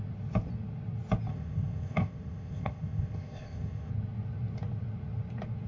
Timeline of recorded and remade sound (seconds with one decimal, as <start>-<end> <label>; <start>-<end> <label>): 0.0-1.3 recorded; 1.3-3.9 remade; 3.9-5.7 recorded